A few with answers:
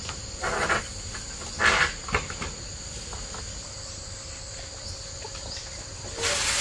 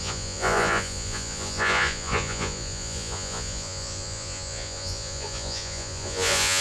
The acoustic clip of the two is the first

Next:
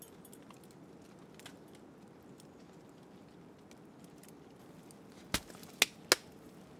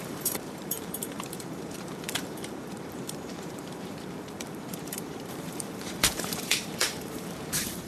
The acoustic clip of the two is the first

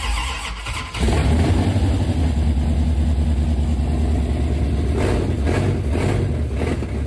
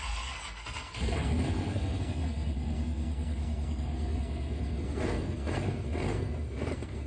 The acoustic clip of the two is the first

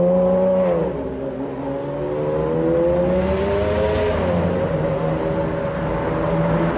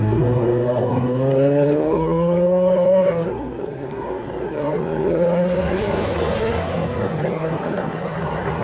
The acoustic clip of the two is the first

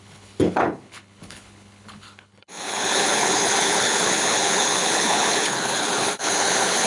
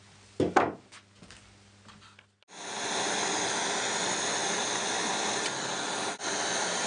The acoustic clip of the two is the second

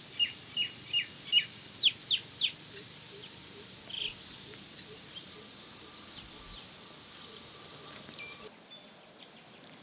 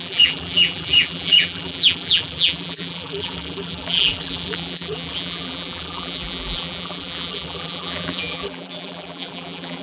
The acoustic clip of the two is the first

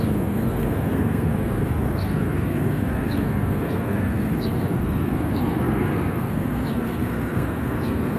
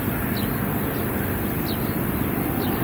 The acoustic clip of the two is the second